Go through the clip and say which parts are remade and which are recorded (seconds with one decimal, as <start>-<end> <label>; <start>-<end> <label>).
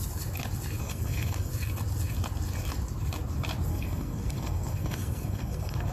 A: 0.0-0.8 recorded; 0.8-1.5 remade; 1.5-3.7 recorded; 3.7-5.9 remade